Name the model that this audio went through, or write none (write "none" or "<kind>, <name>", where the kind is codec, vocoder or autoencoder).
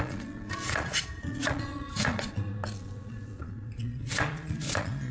vocoder, Vocos